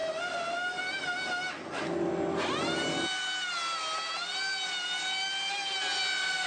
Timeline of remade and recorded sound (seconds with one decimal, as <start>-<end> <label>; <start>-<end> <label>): 0.0-6.5 recorded